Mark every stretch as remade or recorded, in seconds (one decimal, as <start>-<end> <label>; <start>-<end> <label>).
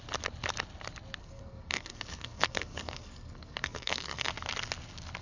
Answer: 0.0-1.2 recorded; 1.2-4.3 remade; 4.3-5.2 recorded